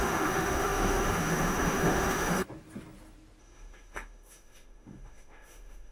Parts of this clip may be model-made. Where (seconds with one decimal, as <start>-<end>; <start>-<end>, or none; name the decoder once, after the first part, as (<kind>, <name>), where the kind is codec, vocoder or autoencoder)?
0.0-2.4 (autoencoder, DAC-VAE); 3.4-5.9